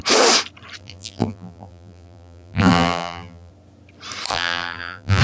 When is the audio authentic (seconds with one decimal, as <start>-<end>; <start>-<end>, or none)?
0.0-0.8; 3.5-4.3